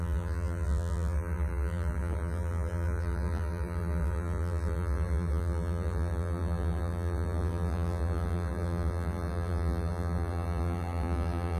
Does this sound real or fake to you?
fake